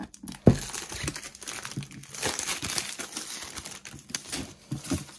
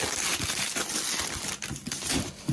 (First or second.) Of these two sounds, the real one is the first